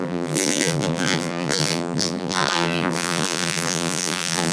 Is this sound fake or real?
fake